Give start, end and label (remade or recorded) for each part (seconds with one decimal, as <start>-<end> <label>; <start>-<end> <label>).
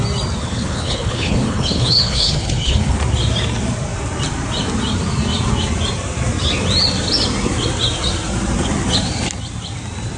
0.0-0.4 recorded; 0.4-3.0 remade; 3.0-10.2 recorded